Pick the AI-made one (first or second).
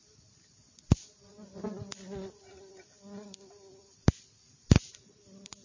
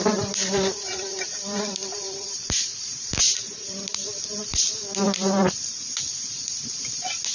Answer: second